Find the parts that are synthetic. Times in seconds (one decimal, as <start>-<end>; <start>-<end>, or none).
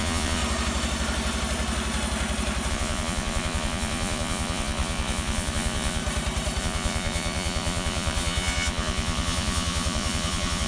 0.0-0.4; 2.7-6.0; 6.6-10.7